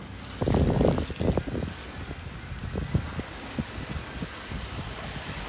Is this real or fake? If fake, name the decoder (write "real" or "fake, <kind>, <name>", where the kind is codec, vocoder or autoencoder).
real